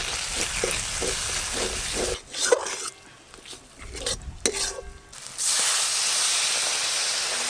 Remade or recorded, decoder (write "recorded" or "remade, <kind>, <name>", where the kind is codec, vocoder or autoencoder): recorded